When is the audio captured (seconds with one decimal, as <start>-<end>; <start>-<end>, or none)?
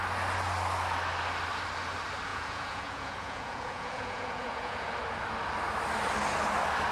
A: 0.0-2.3; 4.9-6.9